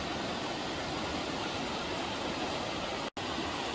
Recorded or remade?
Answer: recorded